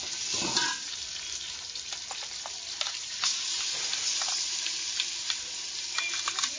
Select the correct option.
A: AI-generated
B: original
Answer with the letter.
B